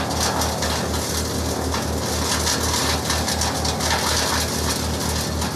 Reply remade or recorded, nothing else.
recorded